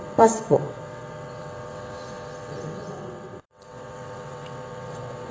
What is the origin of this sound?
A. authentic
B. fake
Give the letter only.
B